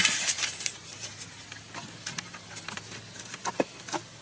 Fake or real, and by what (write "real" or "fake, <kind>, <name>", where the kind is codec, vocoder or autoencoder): real